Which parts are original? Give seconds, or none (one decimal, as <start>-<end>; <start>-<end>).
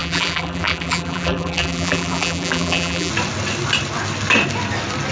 3.1-5.1